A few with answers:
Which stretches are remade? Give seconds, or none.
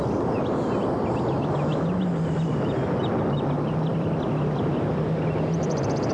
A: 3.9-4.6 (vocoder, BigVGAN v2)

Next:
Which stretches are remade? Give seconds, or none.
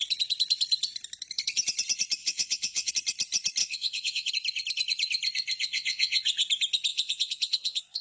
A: 2.2-2.9 (vocoder, Vocos); 3.6-4.3; 5.6-6.2; 6.9-8.0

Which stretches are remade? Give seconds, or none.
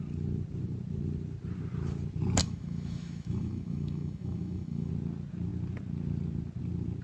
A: 2.4-4.9 (autoencoder, DAC-VAE)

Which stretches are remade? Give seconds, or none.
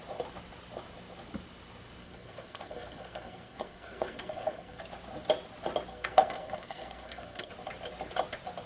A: 2.0-4.8 (codec, SNAC); 5.9-7.5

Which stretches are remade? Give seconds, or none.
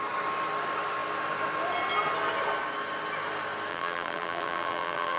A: 3.7-5.2 (vocoder, BigVGAN v2)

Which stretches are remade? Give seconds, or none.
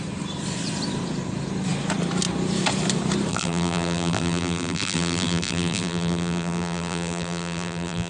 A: 3.3-8.1 (vocoder, BigVGAN v2)